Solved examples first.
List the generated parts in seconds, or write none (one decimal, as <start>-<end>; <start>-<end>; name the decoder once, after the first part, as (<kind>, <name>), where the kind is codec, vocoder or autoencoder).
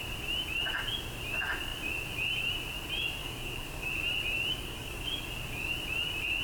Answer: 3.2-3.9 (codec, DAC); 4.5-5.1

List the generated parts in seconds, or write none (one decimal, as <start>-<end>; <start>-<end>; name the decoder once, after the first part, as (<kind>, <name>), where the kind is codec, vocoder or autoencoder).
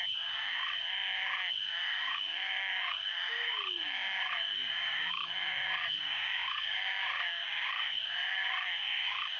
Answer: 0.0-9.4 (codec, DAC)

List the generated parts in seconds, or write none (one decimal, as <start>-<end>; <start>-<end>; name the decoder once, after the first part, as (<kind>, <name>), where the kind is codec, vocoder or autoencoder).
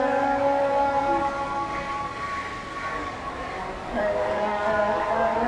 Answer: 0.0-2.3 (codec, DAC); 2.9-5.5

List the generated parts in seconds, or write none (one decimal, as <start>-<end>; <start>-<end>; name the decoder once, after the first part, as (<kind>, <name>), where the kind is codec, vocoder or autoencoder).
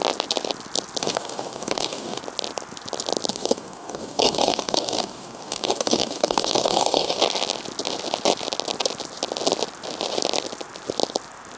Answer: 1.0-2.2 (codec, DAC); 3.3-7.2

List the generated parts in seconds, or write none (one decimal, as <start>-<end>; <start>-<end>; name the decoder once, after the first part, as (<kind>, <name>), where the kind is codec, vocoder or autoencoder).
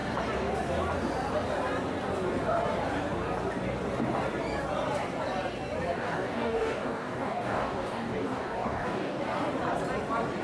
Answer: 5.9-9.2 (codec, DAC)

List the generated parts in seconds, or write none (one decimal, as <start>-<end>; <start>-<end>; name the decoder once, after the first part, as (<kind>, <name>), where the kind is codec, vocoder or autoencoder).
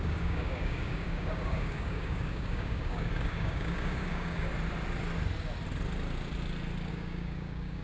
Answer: 0.0-4.5 (codec, DAC); 6.9-7.8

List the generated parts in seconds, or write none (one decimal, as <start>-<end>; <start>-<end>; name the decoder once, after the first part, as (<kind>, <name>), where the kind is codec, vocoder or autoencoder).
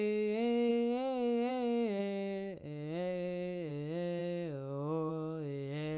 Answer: 0.7-1.5 (codec, DAC); 2.0-3.7